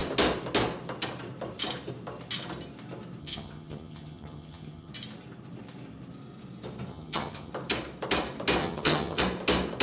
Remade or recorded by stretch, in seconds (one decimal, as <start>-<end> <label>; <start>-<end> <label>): 0.0-3.2 recorded; 3.2-4.9 remade; 4.9-6.9 recorded; 6.9-7.5 remade; 7.5-8.6 recorded; 8.6-9.2 remade; 9.2-9.8 recorded